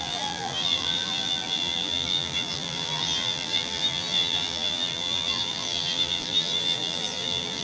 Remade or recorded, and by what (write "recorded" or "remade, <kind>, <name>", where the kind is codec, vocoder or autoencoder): remade, vocoder, BigVGAN v2